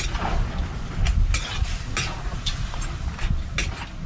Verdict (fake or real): real